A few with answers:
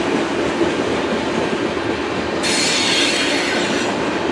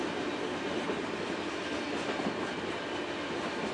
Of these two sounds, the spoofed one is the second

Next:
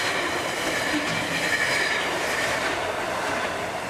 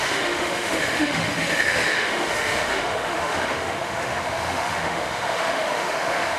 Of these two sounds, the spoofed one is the second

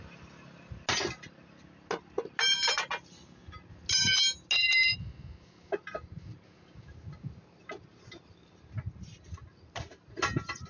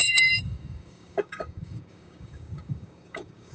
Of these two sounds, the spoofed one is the second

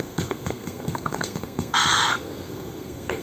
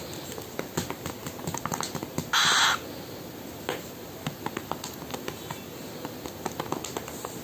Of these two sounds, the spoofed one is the first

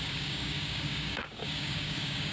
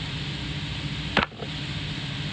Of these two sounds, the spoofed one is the first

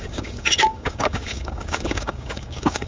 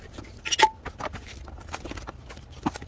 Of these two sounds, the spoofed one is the first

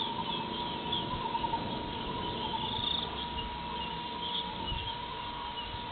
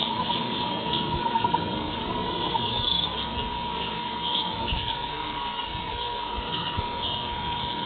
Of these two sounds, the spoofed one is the second